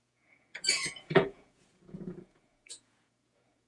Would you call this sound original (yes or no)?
no